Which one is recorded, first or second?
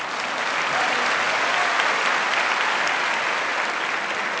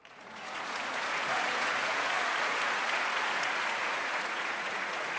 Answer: first